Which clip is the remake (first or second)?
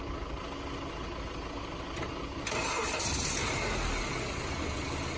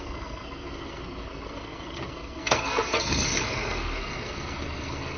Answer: second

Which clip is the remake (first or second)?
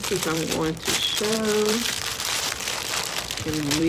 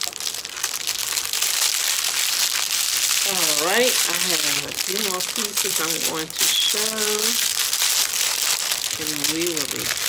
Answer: first